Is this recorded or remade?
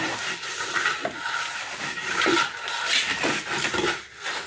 recorded